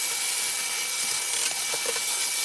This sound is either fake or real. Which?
real